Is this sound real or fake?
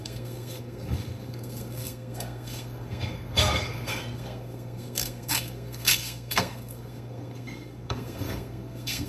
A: fake